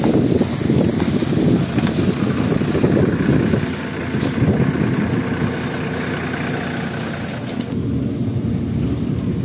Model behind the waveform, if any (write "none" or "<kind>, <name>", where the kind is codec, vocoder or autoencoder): none